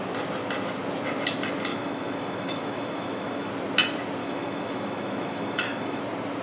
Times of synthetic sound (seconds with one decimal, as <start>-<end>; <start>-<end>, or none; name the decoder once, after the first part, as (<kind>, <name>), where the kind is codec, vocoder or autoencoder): 1.7-3.5 (autoencoder, DAC-VAE); 4.2-6.0